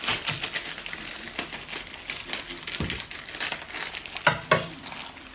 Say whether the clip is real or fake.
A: real